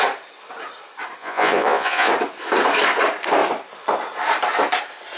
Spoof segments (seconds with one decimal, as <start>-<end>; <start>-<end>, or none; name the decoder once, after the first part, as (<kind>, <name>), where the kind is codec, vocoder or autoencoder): 1.2-2.1 (vocoder, Vocos)